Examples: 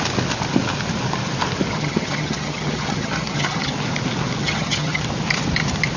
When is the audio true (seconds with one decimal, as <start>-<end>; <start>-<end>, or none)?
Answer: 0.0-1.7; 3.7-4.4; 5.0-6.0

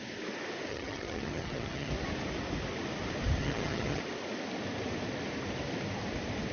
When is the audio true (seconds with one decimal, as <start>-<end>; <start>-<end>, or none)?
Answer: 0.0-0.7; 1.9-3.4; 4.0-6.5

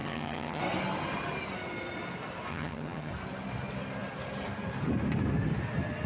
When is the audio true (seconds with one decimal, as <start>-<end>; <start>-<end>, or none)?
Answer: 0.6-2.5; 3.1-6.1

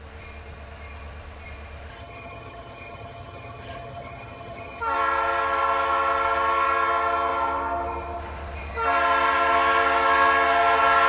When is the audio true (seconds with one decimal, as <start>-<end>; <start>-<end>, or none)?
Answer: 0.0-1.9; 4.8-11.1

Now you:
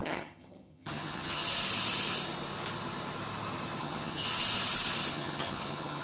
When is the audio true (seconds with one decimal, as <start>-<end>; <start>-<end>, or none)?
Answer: 1.4-3.8; 4.2-5.1

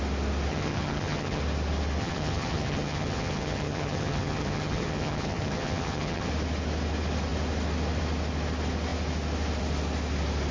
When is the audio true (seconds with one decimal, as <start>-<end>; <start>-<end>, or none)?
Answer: 0.0-0.5; 1.4-2.0; 6.3-10.5

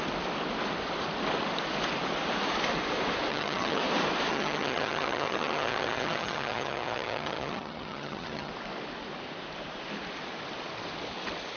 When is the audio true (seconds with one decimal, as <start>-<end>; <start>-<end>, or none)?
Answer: 0.0-3.3; 3.8-4.3; 8.5-11.6

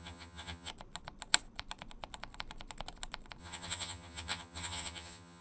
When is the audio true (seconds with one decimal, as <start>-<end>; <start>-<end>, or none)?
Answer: 0.7-3.4